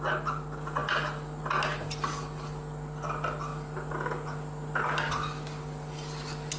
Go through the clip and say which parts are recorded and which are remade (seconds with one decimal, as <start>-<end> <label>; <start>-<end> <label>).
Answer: 0.0-6.6 recorded